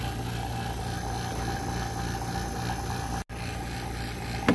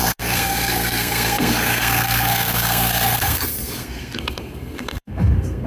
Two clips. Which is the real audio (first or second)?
first